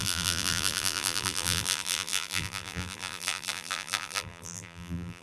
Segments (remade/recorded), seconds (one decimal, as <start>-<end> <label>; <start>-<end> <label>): 0.0-5.2 remade